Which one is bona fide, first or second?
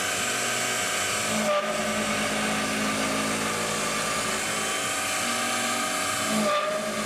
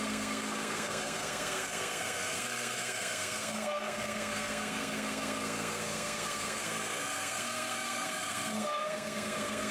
first